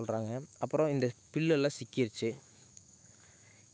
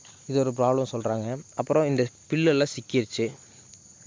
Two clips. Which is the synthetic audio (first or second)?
first